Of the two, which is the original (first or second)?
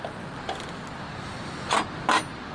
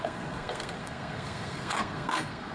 first